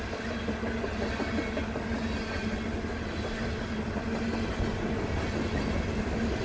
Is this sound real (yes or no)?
yes